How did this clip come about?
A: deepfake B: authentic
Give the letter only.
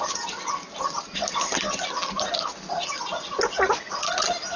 B